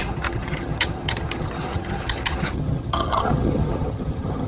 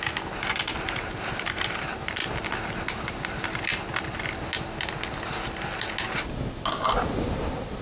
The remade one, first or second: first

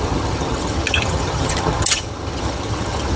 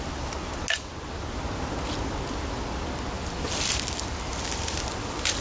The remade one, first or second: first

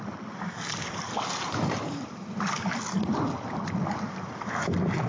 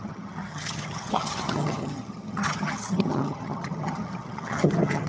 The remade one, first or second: second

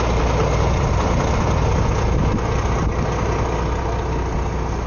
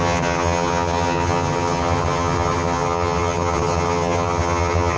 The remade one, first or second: second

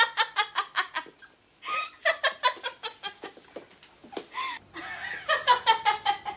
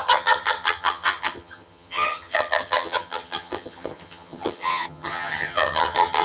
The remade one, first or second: second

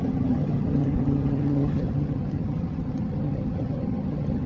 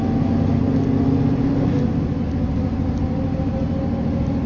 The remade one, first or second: first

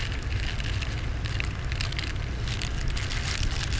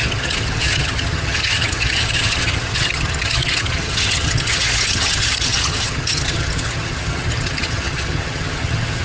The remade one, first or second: second